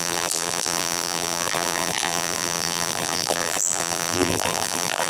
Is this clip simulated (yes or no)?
yes